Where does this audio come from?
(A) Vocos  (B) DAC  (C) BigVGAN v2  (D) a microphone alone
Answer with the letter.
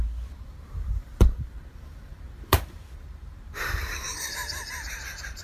C